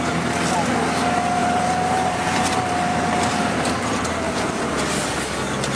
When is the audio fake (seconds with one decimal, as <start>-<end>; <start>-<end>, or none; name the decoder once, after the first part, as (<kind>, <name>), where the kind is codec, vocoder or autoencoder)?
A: 1.4-2.4 (vocoder, BigVGAN v2); 2.9-4.6